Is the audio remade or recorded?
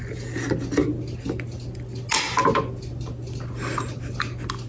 recorded